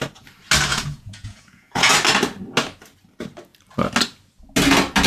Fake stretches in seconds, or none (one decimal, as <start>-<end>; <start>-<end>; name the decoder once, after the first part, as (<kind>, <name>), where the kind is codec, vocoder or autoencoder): 0.7-1.9 (vocoder, Vocos)

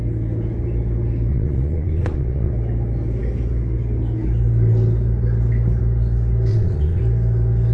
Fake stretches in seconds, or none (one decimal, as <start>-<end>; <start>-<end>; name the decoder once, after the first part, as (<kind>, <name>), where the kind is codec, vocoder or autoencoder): 1.3-2.5 (vocoder, Vocos); 6.5-7.0

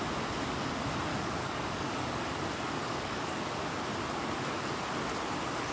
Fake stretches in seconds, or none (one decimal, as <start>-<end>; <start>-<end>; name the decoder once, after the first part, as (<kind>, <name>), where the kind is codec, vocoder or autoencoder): 1.1-2.2 (codec, DAC); 2.8-3.4

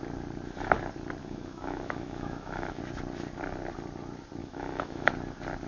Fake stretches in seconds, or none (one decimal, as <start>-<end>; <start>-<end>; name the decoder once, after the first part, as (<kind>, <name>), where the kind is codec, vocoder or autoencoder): 1.2-2.8 (autoencoder, DAC-VAE); 4.4-5.1

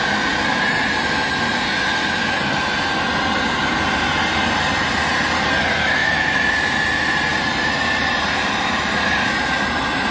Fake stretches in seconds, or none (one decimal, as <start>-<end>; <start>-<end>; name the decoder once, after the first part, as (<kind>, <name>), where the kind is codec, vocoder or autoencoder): 6.0-6.8 (vocoder, BigVGAN v2); 7.3-10.1

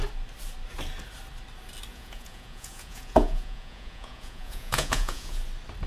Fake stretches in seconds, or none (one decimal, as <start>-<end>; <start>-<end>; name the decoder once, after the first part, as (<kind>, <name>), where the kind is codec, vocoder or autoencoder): 1.9-5.4 (vocoder, Vocos)

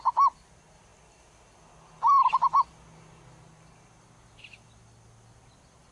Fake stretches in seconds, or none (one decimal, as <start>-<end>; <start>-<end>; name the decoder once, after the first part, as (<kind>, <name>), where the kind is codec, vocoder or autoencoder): none